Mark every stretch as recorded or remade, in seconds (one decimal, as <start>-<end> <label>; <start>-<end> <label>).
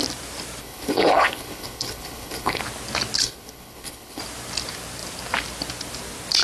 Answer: 0.0-0.6 recorded; 0.6-2.6 remade; 2.6-3.2 recorded; 3.2-4.2 remade; 4.2-6.4 recorded